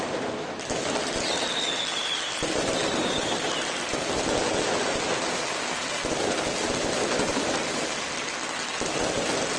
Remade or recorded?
recorded